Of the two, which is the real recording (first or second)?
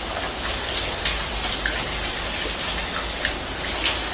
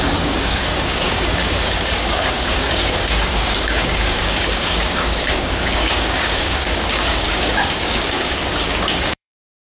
first